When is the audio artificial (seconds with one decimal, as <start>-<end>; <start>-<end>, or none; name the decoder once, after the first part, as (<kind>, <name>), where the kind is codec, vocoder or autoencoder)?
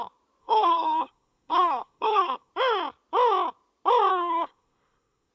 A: 0.4-2.5 (codec, SNAC); 4.1-5.3